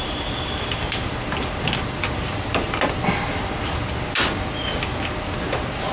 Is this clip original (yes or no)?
yes